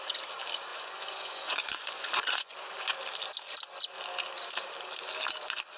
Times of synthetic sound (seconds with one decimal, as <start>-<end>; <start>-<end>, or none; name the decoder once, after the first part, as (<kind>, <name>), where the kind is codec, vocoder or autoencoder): 0.7-2.7 (vocoder, Vocos)